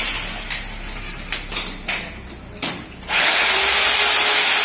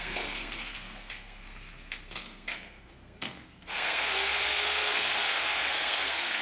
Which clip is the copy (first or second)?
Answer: second